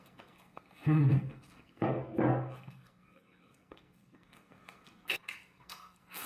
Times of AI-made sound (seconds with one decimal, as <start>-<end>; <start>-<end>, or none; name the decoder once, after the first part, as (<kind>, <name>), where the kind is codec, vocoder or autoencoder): 0.0-6.3 (codec, SNAC)